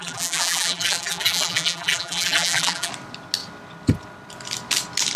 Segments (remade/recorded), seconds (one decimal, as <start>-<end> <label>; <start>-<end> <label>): 0.0-2.9 remade; 2.9-5.2 recorded